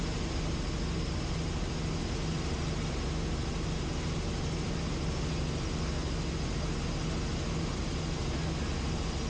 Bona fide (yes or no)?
yes